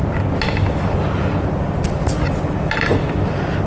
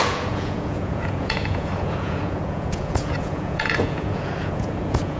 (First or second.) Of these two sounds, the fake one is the second